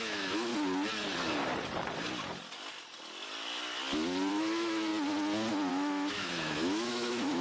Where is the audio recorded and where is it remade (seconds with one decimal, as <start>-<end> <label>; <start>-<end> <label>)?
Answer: 0.0-0.5 remade; 0.5-4.3 recorded; 4.3-4.9 remade; 4.9-5.7 recorded; 5.7-7.4 remade